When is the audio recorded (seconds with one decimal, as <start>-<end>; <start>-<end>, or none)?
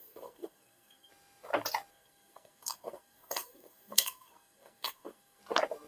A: 1.1-1.9; 5.4-5.9